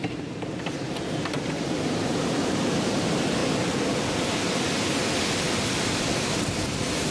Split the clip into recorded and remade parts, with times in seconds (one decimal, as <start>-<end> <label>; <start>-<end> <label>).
0.0-3.4 remade; 3.4-6.0 recorded; 6.0-7.1 remade